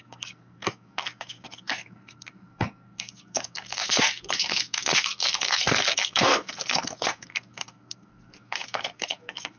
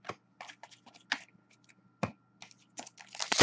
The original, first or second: second